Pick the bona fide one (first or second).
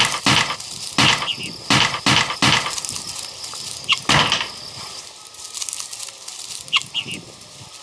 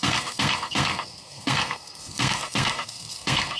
first